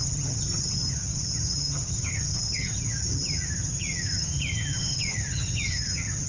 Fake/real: fake